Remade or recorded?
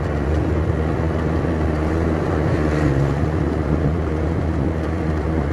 remade